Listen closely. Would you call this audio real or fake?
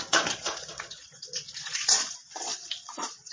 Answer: fake